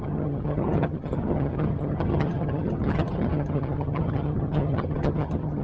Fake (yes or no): yes